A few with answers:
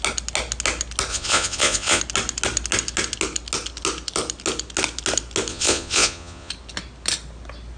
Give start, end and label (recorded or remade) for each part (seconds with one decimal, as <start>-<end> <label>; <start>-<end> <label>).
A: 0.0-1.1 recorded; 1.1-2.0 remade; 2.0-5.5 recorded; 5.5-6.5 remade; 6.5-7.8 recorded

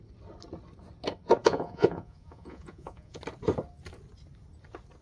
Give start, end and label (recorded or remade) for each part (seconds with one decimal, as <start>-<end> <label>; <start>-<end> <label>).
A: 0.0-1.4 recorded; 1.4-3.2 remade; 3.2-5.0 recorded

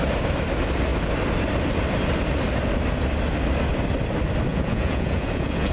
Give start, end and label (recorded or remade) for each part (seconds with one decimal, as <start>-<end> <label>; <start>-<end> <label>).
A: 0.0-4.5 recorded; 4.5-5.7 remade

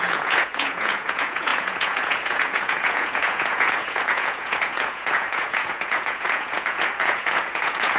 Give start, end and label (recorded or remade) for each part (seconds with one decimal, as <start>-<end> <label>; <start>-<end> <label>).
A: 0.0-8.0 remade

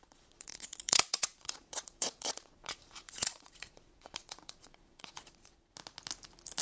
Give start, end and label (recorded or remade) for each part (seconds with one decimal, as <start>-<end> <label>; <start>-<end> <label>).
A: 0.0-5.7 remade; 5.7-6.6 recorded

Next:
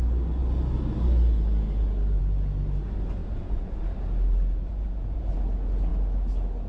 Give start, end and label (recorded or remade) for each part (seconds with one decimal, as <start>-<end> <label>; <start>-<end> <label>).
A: 0.0-3.2 recorded; 3.2-3.8 remade; 3.8-4.7 recorded; 4.7-5.2 remade; 5.2-6.7 recorded

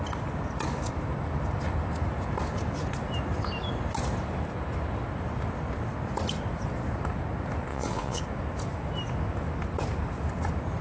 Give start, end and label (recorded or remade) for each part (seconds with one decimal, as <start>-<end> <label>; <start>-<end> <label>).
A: 0.0-7.7 recorded; 7.7-8.2 remade; 8.2-10.8 recorded

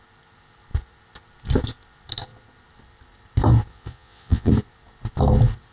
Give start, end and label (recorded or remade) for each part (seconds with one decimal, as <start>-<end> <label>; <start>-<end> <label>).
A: 0.0-3.7 recorded; 3.7-4.5 remade; 4.5-5.7 recorded